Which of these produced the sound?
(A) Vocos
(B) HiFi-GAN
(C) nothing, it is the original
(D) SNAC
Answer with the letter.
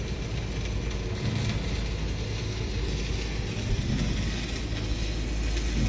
C